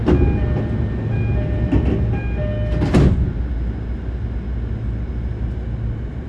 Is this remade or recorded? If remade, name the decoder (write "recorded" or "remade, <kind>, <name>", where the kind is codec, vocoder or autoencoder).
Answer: recorded